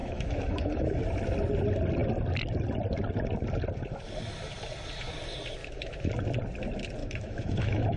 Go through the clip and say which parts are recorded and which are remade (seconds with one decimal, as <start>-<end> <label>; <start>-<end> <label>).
0.0-1.0 remade; 1.0-5.6 recorded; 5.6-6.1 remade; 6.1-7.0 recorded; 7.0-8.0 remade